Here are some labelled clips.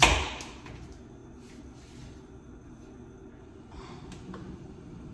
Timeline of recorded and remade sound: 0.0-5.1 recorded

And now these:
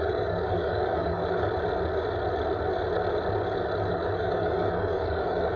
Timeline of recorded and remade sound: 0.0-1.2 remade; 1.2-3.9 recorded; 3.9-5.6 remade

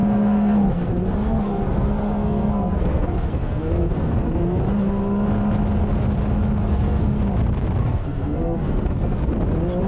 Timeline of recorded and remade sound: 0.0-4.6 remade; 4.6-6.6 recorded; 6.6-7.2 remade; 7.2-7.8 recorded; 7.8-9.3 remade; 9.3-9.9 recorded

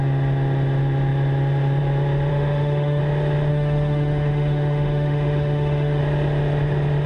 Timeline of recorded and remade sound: 0.0-2.3 recorded; 2.3-3.0 remade; 3.0-3.5 recorded; 3.5-6.0 remade; 6.0-7.1 recorded

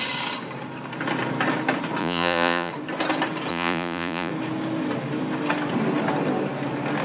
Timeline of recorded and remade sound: 0.0-2.0 recorded; 2.0-2.7 remade; 2.7-3.5 recorded; 3.5-4.3 remade; 4.3-7.0 recorded

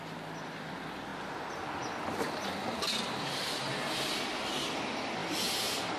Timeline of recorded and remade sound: 0.0-6.0 recorded

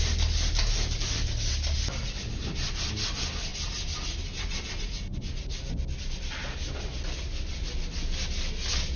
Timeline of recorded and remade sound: 0.0-9.0 recorded